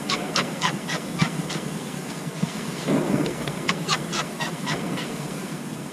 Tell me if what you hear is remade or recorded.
remade